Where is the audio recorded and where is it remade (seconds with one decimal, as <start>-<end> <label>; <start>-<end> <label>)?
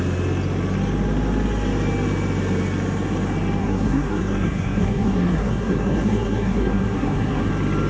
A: 0.0-3.6 recorded; 3.6-7.5 remade; 7.5-7.9 recorded